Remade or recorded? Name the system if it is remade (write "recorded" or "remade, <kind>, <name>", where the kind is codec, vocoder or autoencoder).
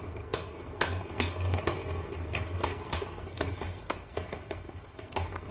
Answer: remade, codec, SNAC